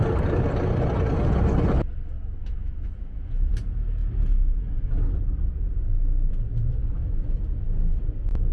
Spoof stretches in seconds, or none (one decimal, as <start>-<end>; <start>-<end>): 2.4-3.5